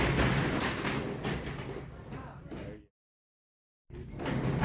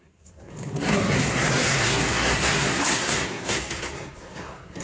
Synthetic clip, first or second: second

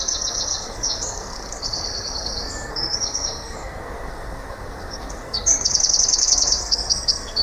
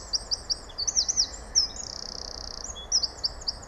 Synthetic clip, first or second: first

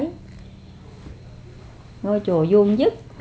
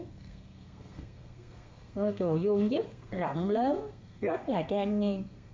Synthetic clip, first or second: second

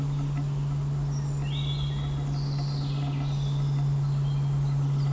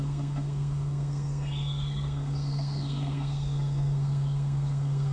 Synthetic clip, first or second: second